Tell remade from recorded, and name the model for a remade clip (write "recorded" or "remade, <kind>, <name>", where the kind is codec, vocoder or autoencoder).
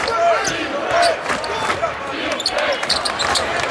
recorded